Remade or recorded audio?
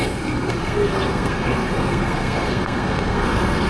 remade